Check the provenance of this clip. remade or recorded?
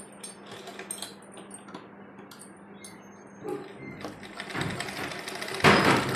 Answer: recorded